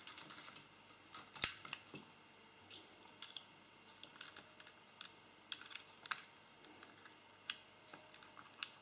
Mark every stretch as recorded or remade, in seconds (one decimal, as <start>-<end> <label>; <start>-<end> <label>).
0.0-8.8 recorded